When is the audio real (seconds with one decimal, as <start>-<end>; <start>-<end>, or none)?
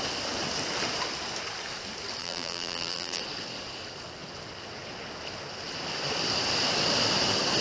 0.0-2.2; 3.2-7.6